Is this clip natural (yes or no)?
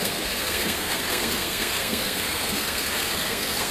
no